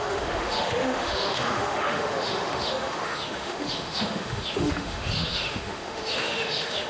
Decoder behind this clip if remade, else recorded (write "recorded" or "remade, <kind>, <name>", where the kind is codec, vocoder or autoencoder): remade, autoencoder, DAC-VAE